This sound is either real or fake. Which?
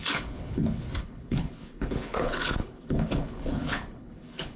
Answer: fake